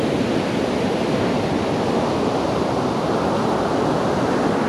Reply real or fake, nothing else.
real